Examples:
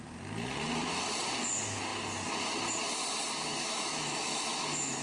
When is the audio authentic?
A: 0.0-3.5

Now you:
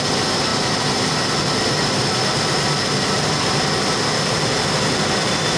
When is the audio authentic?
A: 0.0-5.6

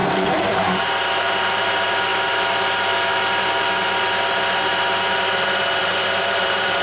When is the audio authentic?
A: 2.1-5.8

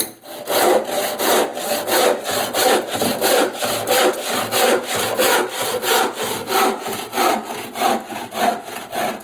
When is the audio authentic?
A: 0.0-9.2